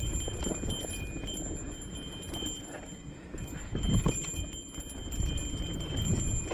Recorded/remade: recorded